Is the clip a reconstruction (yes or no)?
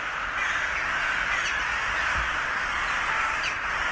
no